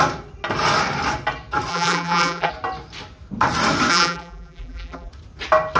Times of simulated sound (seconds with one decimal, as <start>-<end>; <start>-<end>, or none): 1.7-2.5; 3.9-5.1